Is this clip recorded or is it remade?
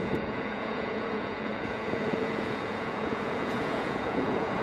remade